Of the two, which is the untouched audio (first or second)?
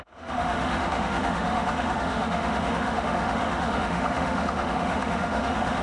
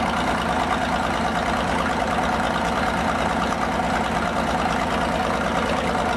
second